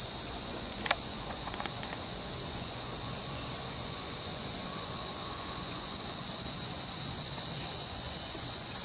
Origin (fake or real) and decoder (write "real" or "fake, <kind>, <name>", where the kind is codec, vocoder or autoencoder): fake, vocoder, Vocos